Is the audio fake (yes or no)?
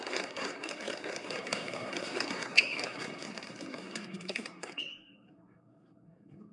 yes